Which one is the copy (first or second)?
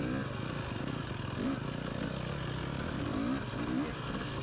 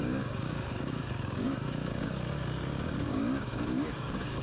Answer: second